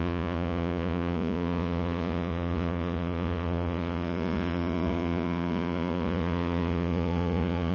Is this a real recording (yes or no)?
no